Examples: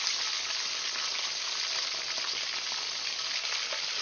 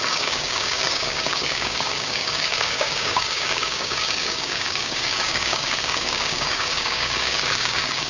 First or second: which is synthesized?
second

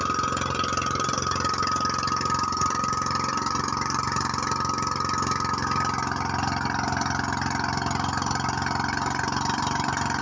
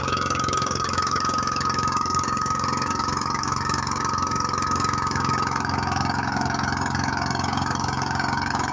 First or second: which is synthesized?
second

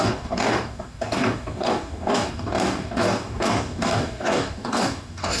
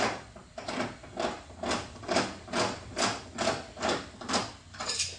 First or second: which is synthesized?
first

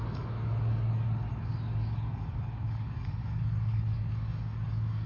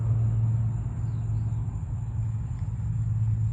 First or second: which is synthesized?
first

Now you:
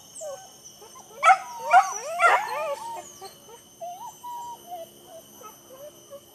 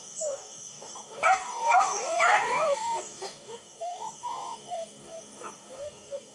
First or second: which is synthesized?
second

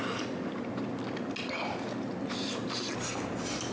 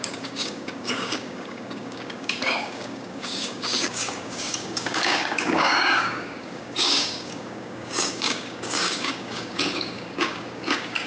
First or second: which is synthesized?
second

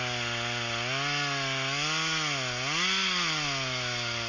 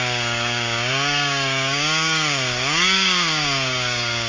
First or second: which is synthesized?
second